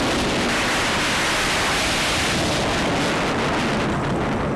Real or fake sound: real